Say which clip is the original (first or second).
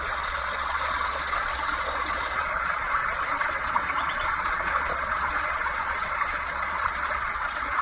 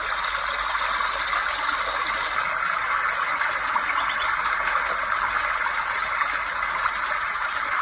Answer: second